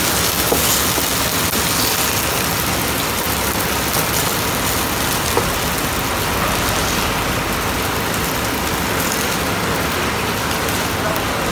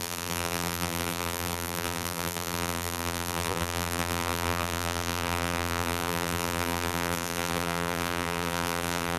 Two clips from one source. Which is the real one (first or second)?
first